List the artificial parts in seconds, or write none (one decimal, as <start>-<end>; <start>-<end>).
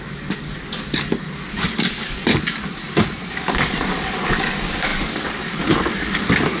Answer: 0.0-2.3; 3.3-6.6